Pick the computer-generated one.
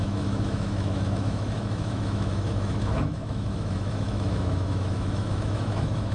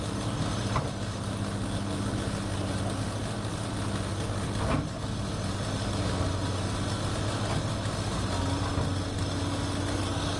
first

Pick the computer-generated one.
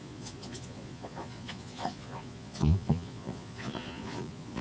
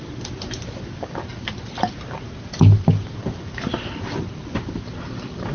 first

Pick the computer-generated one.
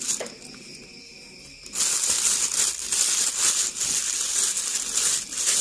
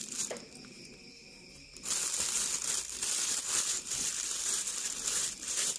second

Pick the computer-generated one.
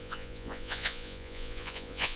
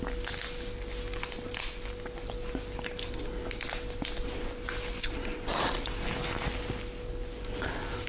first